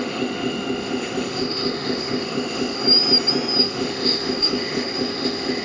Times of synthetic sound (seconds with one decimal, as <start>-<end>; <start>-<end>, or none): 0.0-2.8; 3.6-5.6